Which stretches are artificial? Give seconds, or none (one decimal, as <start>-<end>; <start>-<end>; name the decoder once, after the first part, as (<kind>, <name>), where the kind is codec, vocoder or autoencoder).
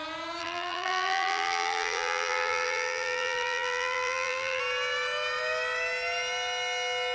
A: 0.4-4.6 (vocoder, BigVGAN v2)